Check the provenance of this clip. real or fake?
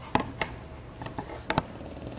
real